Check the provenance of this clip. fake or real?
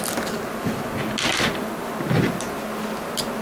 real